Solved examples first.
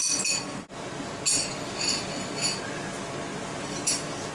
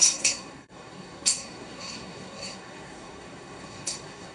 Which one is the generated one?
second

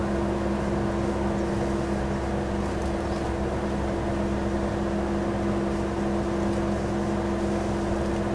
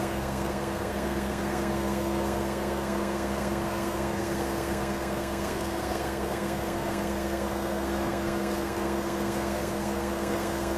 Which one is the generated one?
second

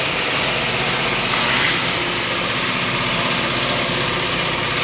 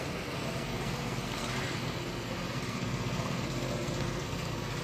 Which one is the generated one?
second